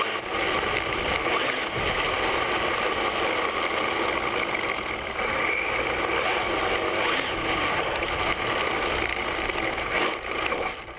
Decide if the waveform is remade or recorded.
recorded